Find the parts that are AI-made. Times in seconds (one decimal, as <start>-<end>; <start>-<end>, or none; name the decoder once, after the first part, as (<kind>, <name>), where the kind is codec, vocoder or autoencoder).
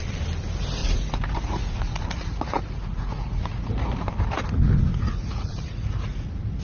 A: 0.8-4.0 (vocoder, Vocos); 4.9-6.6